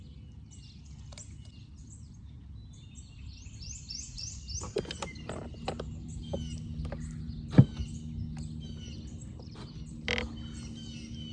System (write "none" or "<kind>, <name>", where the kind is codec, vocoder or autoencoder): none